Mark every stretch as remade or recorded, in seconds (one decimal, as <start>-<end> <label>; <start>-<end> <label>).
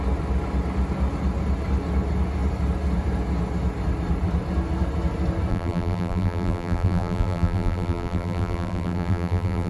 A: 0.0-5.5 recorded; 5.5-9.7 remade